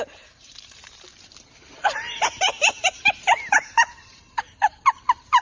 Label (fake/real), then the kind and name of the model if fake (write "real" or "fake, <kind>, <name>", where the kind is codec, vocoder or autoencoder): fake, vocoder, BigVGAN v2